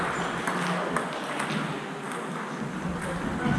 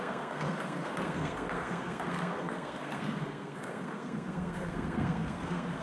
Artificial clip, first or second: second